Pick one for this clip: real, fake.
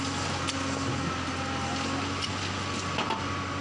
real